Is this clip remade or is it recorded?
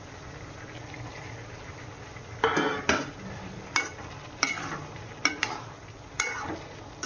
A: recorded